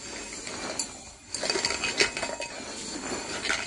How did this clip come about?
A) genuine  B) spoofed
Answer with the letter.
A